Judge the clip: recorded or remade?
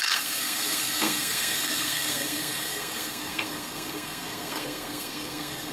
remade